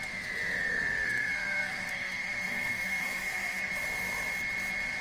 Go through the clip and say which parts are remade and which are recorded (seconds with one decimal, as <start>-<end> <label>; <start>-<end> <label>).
0.0-0.7 recorded; 0.7-3.7 remade; 3.7-5.0 recorded